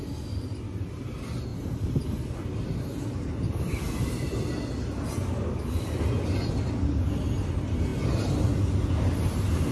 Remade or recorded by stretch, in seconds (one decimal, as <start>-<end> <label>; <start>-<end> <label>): 0.0-9.7 recorded